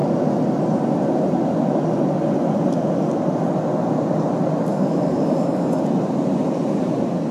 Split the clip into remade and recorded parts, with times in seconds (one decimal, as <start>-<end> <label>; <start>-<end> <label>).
0.0-4.7 recorded; 4.7-5.8 remade; 5.8-7.3 recorded